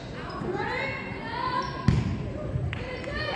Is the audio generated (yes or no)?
no